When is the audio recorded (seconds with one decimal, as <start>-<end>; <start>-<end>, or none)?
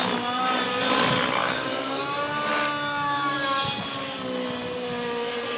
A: 0.0-1.4; 2.0-5.6